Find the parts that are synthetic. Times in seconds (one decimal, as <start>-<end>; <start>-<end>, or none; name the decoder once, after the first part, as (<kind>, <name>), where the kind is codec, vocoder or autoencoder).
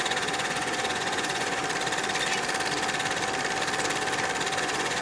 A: 0.0-1.6 (vocoder, Vocos); 4.6-5.0